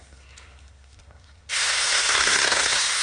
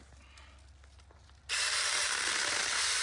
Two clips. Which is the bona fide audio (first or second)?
second